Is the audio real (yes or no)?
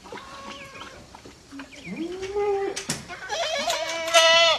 yes